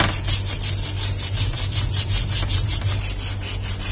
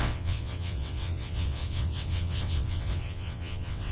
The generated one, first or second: second